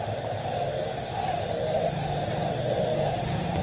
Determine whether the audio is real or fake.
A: real